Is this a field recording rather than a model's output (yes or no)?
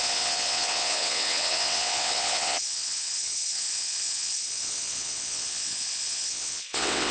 no